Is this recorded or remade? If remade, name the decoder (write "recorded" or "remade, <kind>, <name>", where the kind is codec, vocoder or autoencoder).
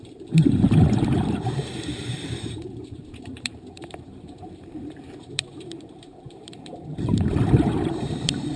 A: remade, vocoder, BigVGAN v2